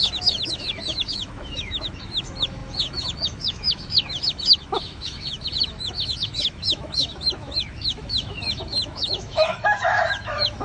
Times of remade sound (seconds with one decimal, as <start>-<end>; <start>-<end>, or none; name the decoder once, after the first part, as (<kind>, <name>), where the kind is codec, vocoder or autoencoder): 0.0-10.6 (autoencoder, DAC-VAE)